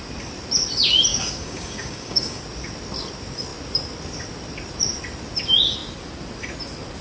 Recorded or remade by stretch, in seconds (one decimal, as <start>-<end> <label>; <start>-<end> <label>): 0.0-1.1 recorded; 1.1-2.4 remade; 2.4-7.0 recorded